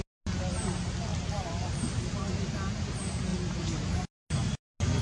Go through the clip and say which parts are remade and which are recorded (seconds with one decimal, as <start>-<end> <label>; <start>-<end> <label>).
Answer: 0.0-1.1 recorded; 1.1-1.9 remade; 1.9-5.0 recorded

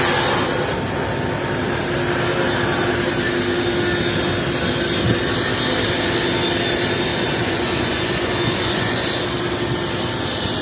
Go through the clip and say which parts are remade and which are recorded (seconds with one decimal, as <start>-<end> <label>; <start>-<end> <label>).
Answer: 0.0-7.1 recorded; 7.1-9.2 remade; 9.2-10.6 recorded

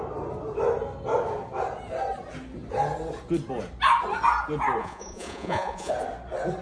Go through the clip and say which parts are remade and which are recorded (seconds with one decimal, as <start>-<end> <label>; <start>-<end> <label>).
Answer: 0.0-4.8 recorded; 4.8-5.9 remade; 5.9-6.6 recorded

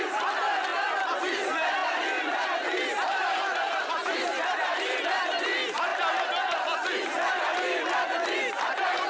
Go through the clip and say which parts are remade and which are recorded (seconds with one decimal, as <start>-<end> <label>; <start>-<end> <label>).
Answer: 0.0-1.8 recorded; 1.8-5.0 remade; 5.0-9.1 recorded